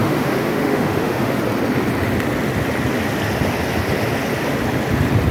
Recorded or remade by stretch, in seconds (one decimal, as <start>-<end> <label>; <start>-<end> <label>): 0.0-1.4 remade; 1.4-5.3 recorded